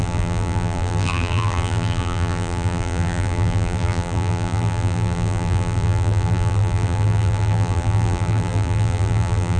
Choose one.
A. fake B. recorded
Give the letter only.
A